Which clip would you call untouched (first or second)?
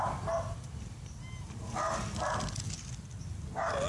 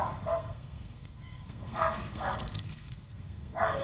first